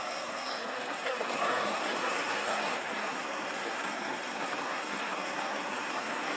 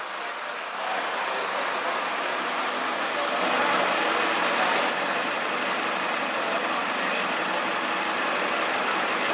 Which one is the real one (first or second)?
second